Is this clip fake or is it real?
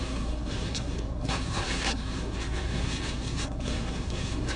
fake